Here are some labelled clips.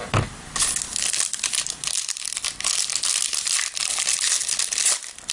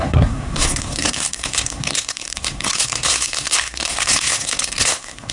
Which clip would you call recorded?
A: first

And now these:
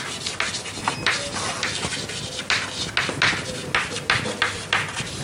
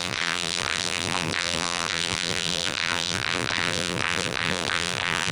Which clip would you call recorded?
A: first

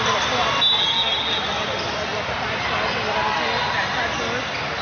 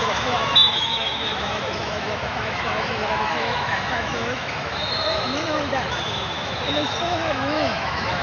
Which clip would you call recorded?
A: first